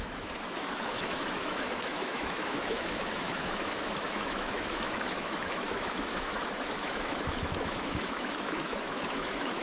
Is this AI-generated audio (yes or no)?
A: yes